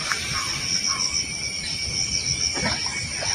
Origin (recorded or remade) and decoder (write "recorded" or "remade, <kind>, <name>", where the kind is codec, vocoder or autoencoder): recorded